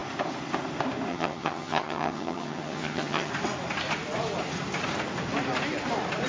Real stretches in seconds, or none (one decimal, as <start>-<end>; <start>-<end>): 0.0-1.1; 3.3-6.3

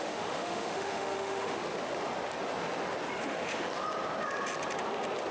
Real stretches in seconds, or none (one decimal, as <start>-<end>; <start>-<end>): 1.6-3.2; 3.7-5.3

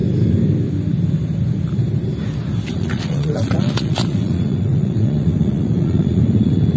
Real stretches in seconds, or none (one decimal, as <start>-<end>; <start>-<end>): 0.0-2.7

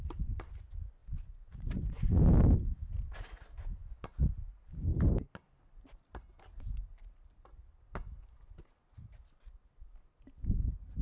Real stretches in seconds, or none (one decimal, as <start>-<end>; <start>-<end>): 0.0-1.0; 2.2-11.0

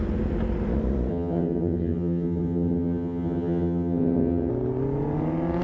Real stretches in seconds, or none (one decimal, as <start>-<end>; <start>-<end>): 0.0-1.1; 4.5-5.6